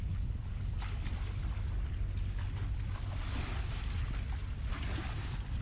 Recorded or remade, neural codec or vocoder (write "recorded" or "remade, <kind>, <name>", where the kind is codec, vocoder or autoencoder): recorded